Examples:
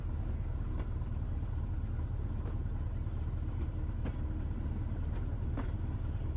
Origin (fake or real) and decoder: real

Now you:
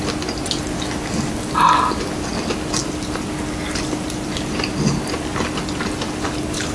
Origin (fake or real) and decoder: real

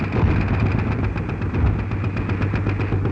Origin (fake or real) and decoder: real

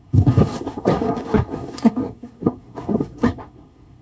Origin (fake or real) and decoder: fake, codec, SNAC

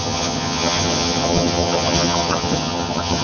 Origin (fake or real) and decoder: fake, vocoder, HiFi-GAN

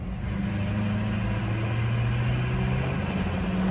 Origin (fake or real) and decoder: real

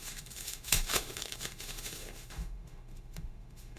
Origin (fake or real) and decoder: fake, autoencoder, DAC-VAE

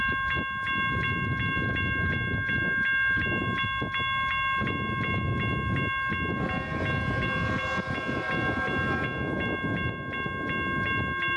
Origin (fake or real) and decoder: real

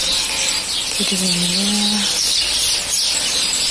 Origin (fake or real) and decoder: real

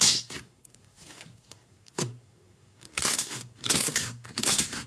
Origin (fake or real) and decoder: fake, codec, SNAC